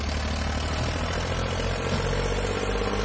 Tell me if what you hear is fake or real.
real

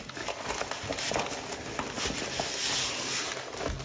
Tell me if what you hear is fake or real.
real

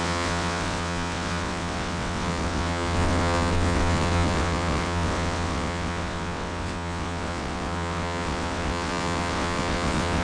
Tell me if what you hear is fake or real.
fake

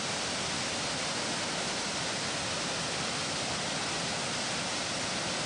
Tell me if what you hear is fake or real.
real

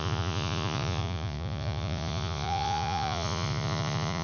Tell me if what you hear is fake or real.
fake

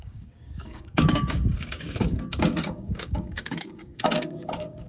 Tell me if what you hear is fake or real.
fake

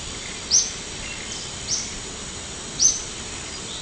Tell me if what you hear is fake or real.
real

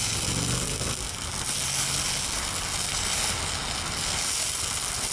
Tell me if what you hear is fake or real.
real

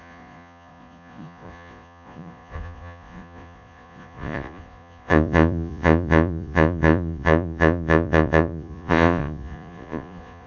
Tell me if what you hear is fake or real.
fake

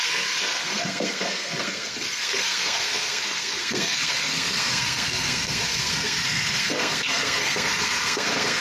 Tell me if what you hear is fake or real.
fake